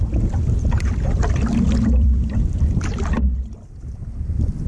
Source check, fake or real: fake